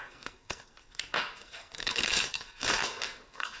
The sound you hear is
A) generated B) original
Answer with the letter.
A